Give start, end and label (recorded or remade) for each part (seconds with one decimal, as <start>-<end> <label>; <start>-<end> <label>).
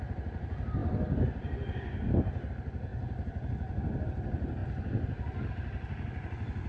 0.0-6.7 recorded